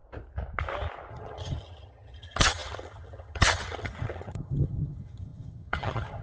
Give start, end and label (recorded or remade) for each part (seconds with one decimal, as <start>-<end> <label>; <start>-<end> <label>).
0.0-1.1 recorded; 1.1-6.2 remade